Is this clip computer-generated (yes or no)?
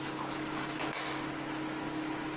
yes